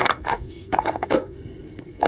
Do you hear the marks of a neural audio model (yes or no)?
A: yes